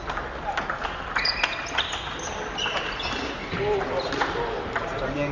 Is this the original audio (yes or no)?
yes